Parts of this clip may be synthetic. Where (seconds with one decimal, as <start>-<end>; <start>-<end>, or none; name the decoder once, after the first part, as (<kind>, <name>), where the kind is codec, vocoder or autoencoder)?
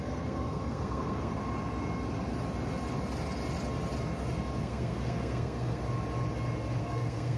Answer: 0.0-1.4 (codec, SNAC); 4.6-5.8; 6.8-7.4